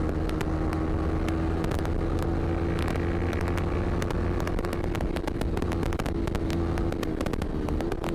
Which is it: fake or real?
real